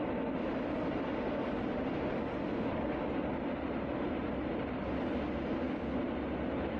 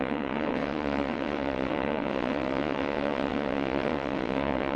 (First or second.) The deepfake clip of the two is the second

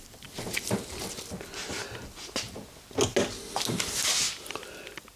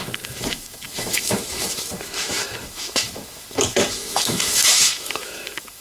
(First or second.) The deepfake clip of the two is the second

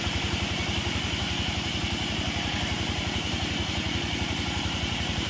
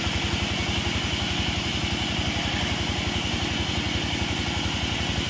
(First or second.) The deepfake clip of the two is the first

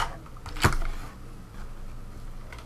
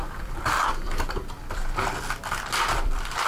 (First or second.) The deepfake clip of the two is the second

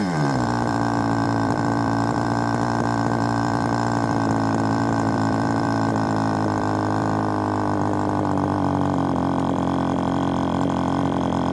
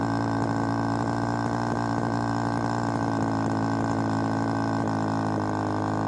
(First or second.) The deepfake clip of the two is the first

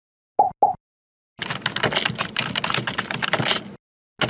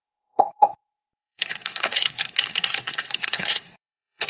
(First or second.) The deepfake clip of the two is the second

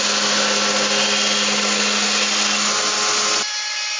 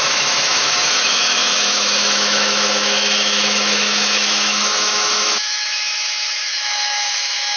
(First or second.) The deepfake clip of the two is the second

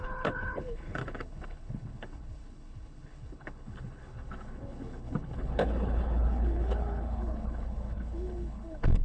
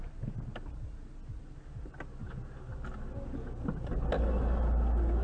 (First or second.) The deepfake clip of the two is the first